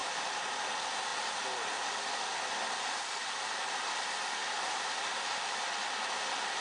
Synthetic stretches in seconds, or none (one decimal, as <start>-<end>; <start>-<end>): 0.0-0.7; 4.4-5.6